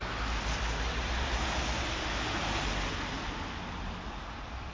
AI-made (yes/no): no